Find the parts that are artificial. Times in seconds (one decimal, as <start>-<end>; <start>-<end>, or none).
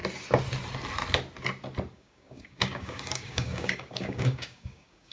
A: 1.9-5.1